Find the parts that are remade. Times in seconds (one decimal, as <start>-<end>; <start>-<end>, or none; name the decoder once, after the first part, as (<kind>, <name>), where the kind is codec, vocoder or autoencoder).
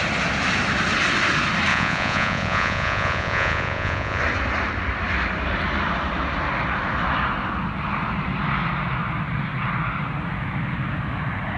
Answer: 1.7-4.2 (vocoder, Vocos)